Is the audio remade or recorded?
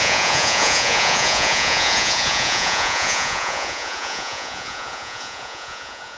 remade